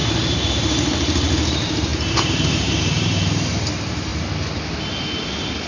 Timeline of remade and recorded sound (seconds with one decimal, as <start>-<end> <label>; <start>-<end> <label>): 0.0-0.5 recorded; 0.5-4.1 remade; 4.1-5.7 recorded